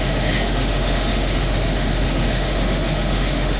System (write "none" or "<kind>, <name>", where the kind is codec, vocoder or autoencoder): autoencoder, DAC-VAE